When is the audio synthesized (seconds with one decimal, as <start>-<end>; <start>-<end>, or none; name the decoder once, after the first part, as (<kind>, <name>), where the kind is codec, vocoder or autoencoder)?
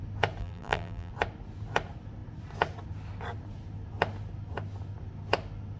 0.4-1.1 (vocoder, BigVGAN v2)